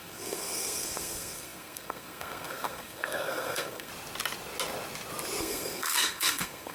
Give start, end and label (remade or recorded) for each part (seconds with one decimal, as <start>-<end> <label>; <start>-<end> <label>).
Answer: 0.0-3.9 remade; 3.9-5.4 recorded; 5.4-6.7 remade